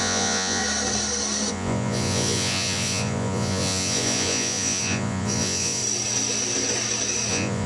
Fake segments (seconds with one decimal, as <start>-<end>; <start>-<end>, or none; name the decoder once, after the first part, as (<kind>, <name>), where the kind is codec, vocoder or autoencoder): 0.0-0.6 (vocoder, Vocos); 1.5-5.8; 7.3-7.7